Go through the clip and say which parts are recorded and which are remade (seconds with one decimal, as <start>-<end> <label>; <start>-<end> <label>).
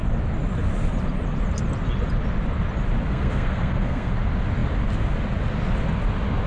0.0-3.1 recorded; 3.1-4.1 remade; 4.1-6.5 recorded